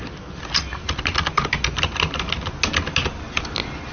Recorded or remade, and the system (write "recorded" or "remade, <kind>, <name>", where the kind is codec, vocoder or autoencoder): recorded